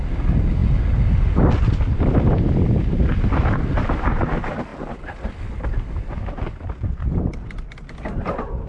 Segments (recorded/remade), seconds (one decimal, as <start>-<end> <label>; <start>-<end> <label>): 0.0-8.7 recorded